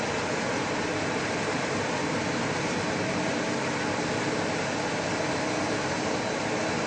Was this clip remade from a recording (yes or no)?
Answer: no